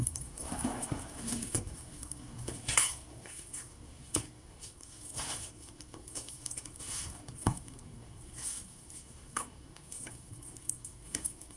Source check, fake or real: fake